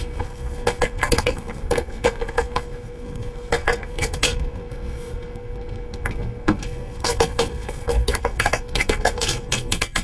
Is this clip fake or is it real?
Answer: fake